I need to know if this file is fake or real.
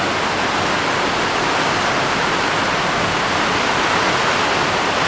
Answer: real